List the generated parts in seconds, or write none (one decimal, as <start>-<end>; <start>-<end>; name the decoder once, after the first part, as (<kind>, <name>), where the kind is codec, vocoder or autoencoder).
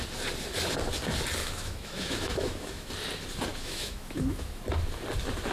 1.4-2.9 (autoencoder, DAC-VAE); 3.5-4.6